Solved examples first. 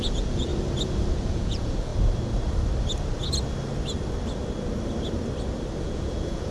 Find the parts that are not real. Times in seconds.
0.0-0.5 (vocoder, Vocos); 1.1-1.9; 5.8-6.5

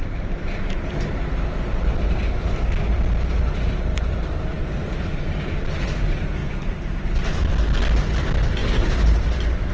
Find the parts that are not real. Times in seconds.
0.0-0.5 (vocoder, BigVGAN v2); 6.4-7.1; 8.6-9.7

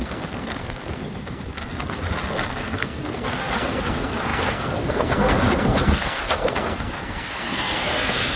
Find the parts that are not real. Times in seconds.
0.0-1.6 (codec, SNAC); 2.5-8.4

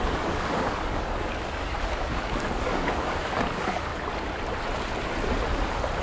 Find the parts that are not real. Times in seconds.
0.0-3.9 (codec, DAC)

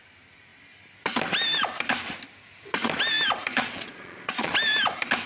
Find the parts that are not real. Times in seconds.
3.5-4.5 (vocoder, Vocos)